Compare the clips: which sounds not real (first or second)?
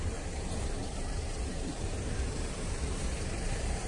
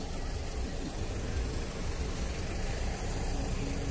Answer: first